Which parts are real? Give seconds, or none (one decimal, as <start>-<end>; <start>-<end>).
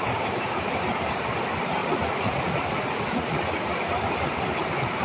0.0-1.8; 3.8-5.0